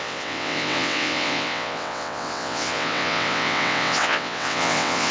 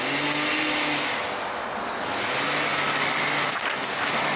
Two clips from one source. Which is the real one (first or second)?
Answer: second